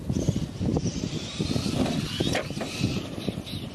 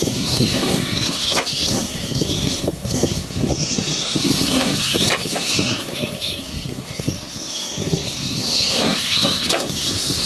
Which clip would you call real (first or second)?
first